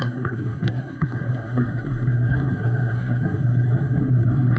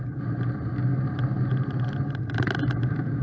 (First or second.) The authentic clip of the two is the second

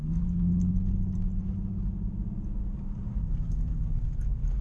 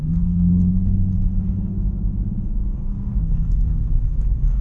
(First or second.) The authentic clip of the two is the first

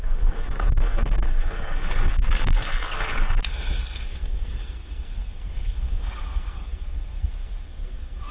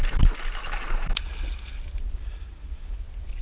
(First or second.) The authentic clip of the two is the second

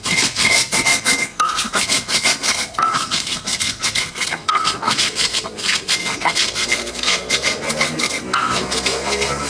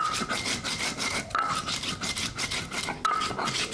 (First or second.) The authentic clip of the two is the second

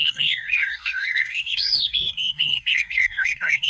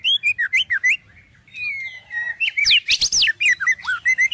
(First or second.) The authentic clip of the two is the second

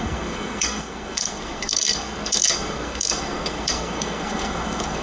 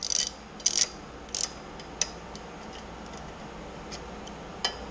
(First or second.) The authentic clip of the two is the second